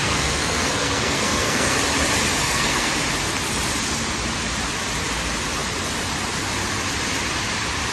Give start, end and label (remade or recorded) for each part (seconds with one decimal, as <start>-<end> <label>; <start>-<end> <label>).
0.0-1.8 remade; 1.8-2.4 recorded; 2.4-2.9 remade; 2.9-7.9 recorded